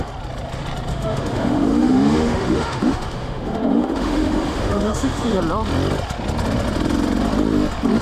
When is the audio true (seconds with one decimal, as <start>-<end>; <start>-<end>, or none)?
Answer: 0.0-0.9; 5.4-8.0

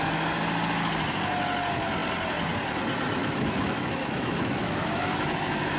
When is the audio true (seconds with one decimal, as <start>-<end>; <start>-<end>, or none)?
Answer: 0.0-3.2

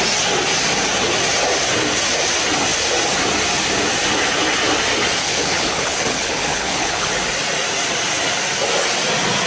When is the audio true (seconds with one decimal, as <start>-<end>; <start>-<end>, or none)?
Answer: 0.0-5.2; 7.1-9.5